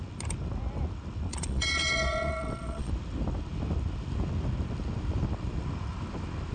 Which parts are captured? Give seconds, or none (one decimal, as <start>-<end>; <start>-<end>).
0.0-1.3; 2.9-6.5